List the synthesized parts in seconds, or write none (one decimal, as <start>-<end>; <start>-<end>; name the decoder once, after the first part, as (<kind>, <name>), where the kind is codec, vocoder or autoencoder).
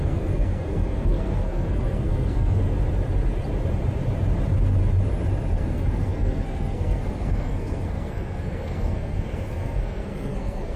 0.0-2.6 (codec, SNAC); 5.5-10.8